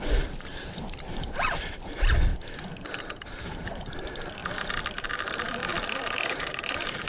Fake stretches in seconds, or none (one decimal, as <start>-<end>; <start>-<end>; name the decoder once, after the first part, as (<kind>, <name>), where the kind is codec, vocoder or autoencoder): 0.0-2.3 (vocoder, BigVGAN v2); 3.0-4.4; 5.0-5.6; 6.3-7.1